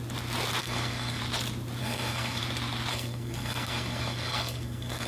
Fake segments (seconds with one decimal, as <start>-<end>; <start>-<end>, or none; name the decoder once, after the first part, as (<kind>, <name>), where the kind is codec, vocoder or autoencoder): 0.6-1.2 (codec, SNAC); 1.8-2.4; 2.9-5.1